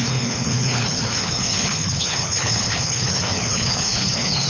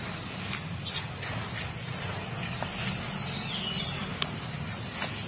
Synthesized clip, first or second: first